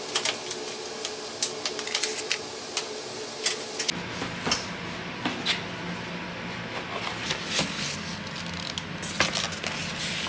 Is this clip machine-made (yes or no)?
no